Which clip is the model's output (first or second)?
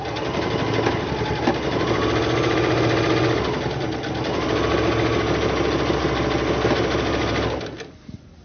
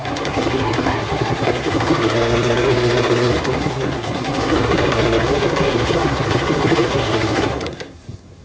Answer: second